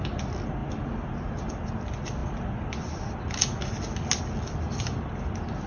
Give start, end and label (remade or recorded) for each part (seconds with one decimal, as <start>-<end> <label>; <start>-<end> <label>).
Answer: 0.0-0.6 recorded; 0.6-1.4 remade; 1.4-5.7 recorded